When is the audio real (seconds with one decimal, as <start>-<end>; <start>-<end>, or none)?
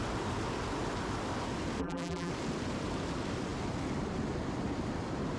0.0-1.8; 2.3-5.4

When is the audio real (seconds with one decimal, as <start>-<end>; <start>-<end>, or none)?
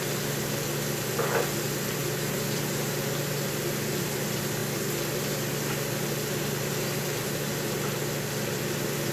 0.0-9.1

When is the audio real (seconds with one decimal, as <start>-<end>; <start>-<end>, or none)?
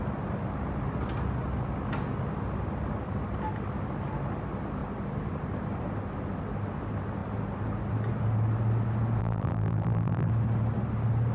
0.0-9.2; 10.3-11.3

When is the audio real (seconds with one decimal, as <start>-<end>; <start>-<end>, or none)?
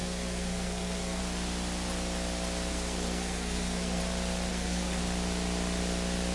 1.2-2.7; 4.0-4.5; 5.0-6.3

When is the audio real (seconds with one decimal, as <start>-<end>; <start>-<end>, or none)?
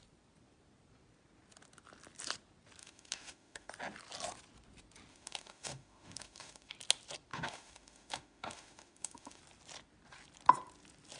0.0-2.8; 3.7-5.1; 6.7-7.3; 9.4-11.2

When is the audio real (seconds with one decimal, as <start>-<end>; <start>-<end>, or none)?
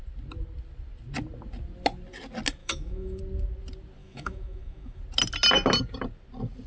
0.0-2.6; 3.2-4.0; 5.0-6.7